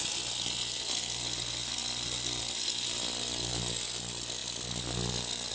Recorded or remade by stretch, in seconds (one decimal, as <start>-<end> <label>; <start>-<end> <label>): 0.0-5.5 recorded